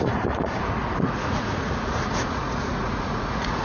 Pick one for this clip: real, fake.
fake